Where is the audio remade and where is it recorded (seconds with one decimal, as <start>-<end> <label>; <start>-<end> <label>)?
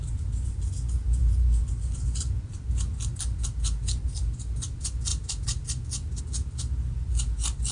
0.0-7.7 recorded